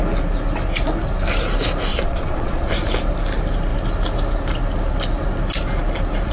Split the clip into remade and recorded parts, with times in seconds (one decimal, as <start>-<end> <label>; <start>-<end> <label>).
0.0-1.9 recorded; 1.9-2.7 remade; 2.7-6.3 recorded